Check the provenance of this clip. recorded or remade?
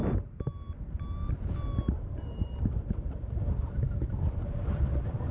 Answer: recorded